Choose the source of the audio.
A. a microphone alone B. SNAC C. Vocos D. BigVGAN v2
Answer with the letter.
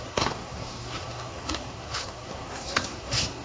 B